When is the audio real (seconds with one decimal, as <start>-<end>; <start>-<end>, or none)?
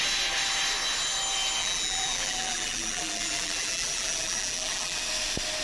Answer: 0.0-1.6; 5.0-5.6